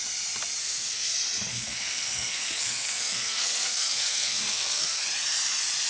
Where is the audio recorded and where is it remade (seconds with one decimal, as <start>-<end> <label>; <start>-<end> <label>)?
0.0-0.6 recorded; 0.6-1.1 remade; 1.1-1.5 recorded; 1.5-5.0 remade; 5.0-5.9 recorded